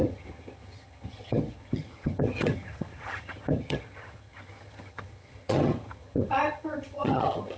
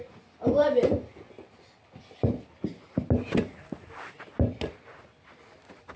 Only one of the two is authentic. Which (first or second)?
second